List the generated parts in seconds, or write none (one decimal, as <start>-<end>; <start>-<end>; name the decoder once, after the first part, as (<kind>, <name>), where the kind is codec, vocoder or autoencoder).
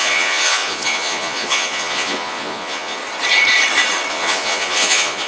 0.0-3.0 (vocoder, Vocos); 4.1-5.3